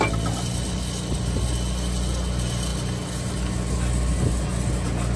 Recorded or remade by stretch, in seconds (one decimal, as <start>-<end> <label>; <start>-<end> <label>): 0.0-5.2 recorded